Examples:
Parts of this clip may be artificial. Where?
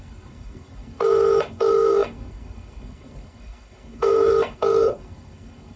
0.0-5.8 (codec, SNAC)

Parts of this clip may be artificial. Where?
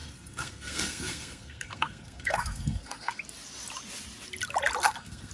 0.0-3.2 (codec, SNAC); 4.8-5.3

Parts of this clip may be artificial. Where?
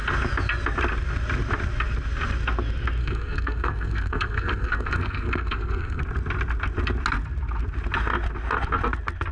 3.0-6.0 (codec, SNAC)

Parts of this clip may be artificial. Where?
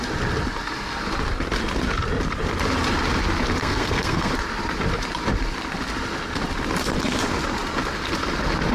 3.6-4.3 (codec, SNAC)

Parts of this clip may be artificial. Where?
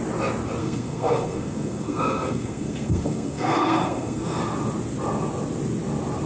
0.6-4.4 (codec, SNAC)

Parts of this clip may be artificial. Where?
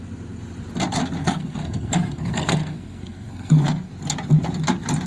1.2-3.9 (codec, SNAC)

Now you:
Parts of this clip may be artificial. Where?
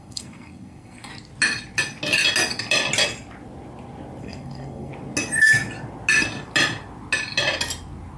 0.0-1.1 (codec, SNAC); 4.2-4.9